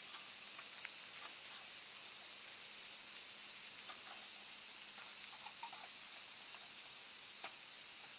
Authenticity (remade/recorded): recorded